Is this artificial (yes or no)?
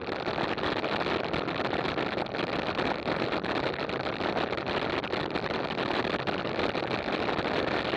no